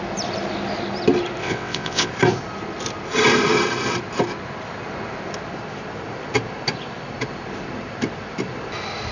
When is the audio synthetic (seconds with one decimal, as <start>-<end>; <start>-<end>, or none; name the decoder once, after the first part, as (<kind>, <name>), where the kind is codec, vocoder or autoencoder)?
1.4-2.1 (vocoder, WaveNeXt)